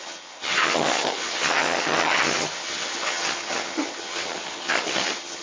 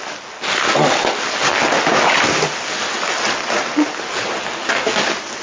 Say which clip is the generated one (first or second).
first